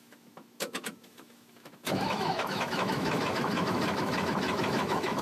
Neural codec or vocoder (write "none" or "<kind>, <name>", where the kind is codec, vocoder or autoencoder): autoencoder, DAC-VAE